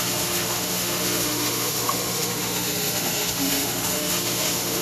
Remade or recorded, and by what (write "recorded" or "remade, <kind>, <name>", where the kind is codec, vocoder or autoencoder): remade, autoencoder, DAC-VAE